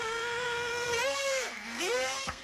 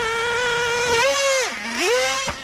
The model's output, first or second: first